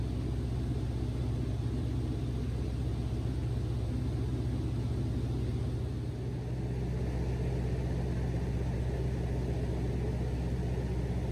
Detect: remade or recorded recorded